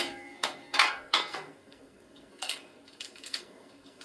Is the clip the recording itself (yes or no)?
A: no